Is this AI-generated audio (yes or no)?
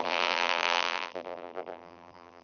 yes